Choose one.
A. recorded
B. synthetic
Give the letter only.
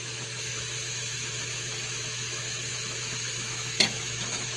B